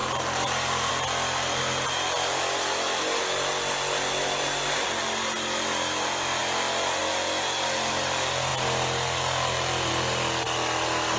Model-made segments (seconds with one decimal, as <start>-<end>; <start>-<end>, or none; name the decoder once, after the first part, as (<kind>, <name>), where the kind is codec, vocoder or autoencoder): none